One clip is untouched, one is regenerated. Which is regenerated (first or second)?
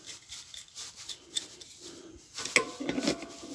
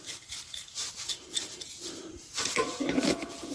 second